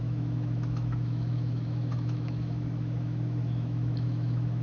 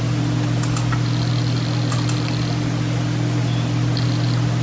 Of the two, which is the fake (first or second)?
first